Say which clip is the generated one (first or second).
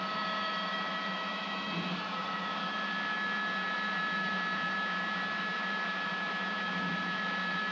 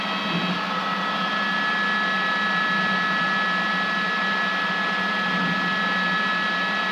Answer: first